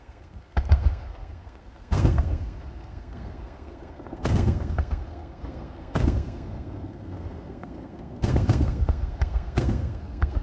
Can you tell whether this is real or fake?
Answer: fake